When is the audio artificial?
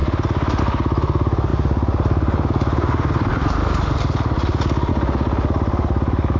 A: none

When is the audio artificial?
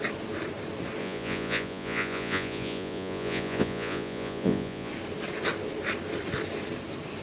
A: 1.0-4.9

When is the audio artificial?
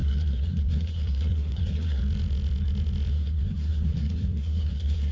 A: 0.0-2.0; 3.1-5.1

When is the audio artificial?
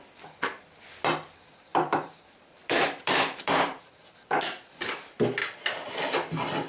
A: 1.7-4.1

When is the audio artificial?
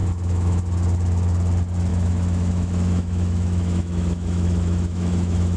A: 0.0-0.6; 1.9-5.6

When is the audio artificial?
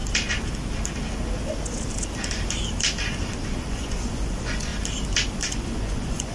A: 3.6-4.7; 5.5-6.3